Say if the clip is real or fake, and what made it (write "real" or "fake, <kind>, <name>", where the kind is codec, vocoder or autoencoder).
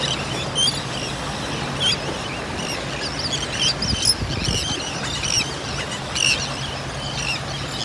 real